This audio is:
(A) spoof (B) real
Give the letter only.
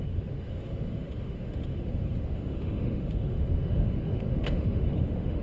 A